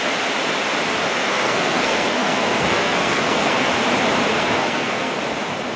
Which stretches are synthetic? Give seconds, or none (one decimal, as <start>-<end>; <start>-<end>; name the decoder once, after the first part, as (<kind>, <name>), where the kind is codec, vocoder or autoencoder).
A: 1.1-3.7 (codec, SNAC); 4.3-5.2